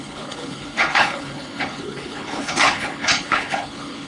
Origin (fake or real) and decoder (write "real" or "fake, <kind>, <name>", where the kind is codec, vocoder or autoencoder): fake, codec, HILCodec